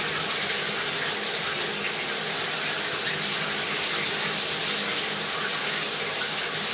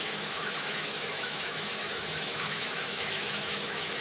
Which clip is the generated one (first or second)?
second